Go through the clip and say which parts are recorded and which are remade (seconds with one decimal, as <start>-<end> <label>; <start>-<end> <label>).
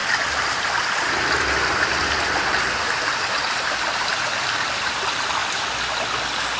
0.0-6.6 recorded